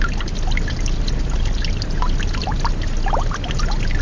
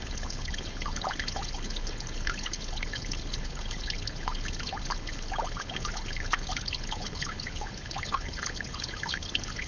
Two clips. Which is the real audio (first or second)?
first